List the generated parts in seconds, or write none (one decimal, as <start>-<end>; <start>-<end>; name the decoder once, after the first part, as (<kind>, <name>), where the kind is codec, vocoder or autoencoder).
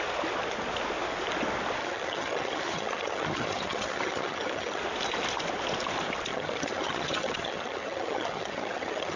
1.8-4.8 (vocoder, HiFi-GAN); 6.3-9.2